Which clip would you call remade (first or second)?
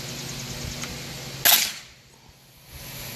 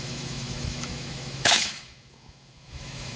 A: second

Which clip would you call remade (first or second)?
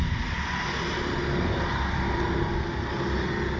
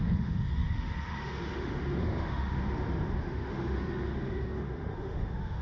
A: second